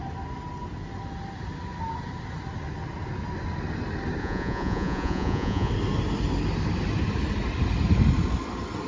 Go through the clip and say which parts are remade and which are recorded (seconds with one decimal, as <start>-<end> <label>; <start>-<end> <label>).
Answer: 0.0-4.2 recorded; 4.2-5.7 remade; 5.7-8.9 recorded